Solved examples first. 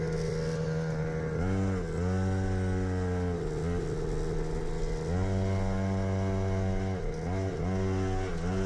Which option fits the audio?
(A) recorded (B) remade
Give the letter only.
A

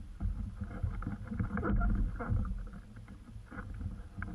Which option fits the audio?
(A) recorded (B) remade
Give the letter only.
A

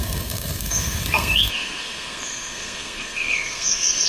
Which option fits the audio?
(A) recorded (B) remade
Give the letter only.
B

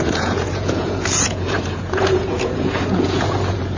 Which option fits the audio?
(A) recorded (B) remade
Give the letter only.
B